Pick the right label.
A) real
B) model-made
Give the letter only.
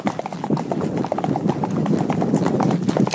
A